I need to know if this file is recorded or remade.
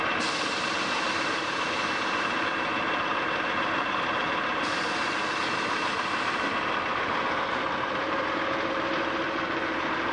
remade